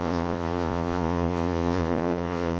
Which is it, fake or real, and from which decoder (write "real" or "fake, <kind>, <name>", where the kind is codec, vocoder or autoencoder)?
fake, vocoder, Vocos